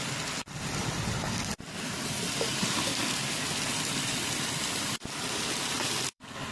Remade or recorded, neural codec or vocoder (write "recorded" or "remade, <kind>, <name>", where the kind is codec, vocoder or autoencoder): remade, vocoder, BigVGAN v2